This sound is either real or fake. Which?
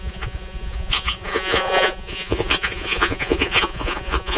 fake